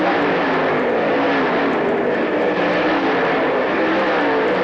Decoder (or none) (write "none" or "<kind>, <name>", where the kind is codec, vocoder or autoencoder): none